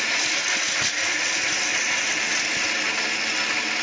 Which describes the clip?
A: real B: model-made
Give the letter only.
A